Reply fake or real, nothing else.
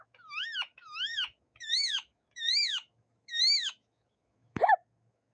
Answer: fake